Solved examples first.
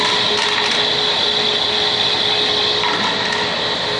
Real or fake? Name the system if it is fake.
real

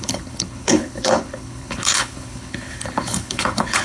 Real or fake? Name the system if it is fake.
fake, codec, HILCodec